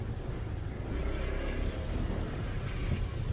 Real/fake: real